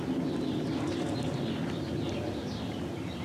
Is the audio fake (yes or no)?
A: no